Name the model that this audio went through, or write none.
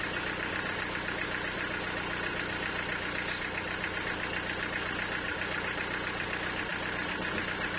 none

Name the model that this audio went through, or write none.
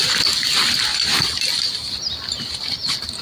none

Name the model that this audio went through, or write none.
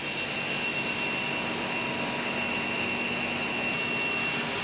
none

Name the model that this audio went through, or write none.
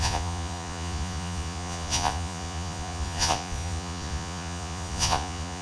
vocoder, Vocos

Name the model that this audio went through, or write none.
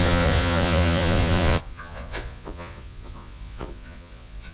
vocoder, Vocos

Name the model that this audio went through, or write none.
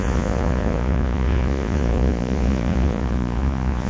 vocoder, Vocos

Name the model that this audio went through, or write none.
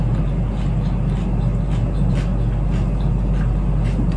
none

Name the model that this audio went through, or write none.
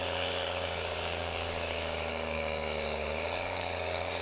codec, DAC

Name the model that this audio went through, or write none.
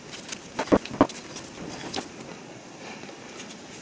none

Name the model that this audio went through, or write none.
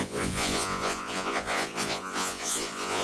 vocoder, Vocos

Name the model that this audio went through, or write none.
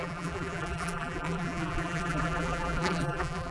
vocoder, BigVGAN v2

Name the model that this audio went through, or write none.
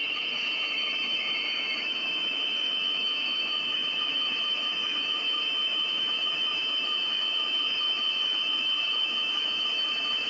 autoencoder, DAC-VAE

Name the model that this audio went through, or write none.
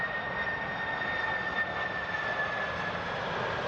none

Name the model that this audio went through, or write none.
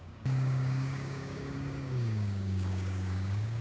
codec, DAC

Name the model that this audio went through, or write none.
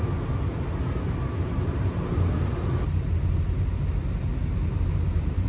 none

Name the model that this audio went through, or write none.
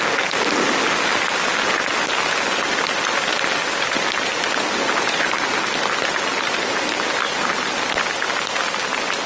none